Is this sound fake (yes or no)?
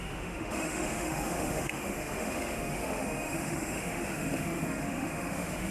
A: yes